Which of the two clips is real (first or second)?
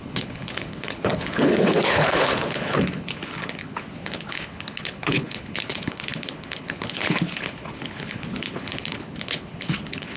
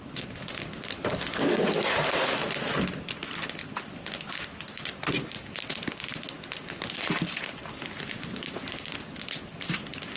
second